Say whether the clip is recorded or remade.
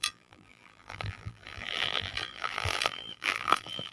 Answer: remade